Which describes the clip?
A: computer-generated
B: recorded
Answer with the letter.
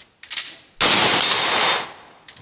B